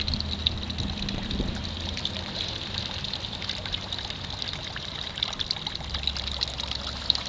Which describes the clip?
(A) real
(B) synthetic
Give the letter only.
A